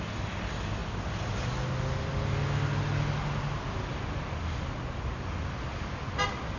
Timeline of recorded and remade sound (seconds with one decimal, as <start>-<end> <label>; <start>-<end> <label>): 0.0-6.6 recorded